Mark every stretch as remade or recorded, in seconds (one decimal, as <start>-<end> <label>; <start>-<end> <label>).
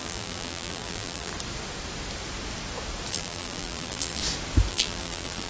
0.0-1.3 remade; 1.3-3.1 recorded; 3.1-4.2 remade; 4.2-4.7 recorded; 4.7-5.5 remade